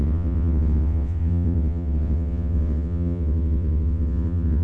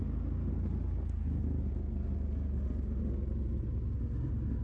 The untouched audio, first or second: second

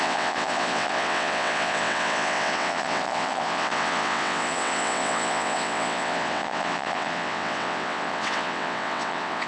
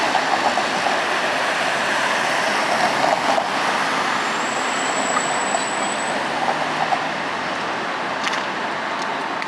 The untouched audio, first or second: second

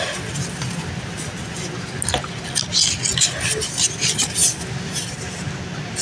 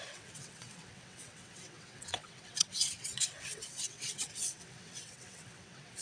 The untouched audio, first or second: first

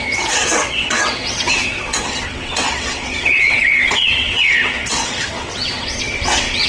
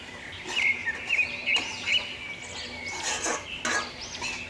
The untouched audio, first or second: second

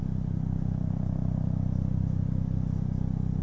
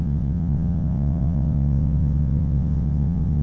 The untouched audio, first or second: first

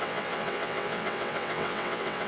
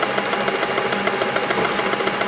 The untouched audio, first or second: second